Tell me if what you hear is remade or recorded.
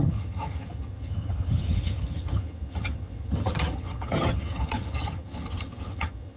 remade